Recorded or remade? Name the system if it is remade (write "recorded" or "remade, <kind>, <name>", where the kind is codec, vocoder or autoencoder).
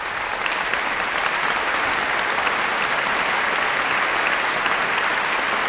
recorded